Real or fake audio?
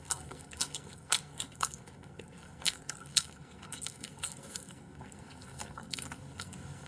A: fake